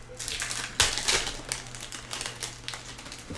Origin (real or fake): real